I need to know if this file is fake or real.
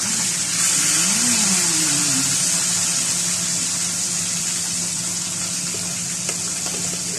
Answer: real